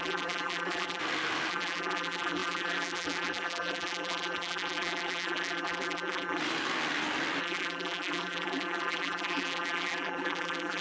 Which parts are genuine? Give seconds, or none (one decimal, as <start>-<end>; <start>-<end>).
1.0-1.5; 6.4-7.4